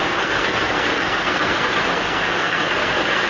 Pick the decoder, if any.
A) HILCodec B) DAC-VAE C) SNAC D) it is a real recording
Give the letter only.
C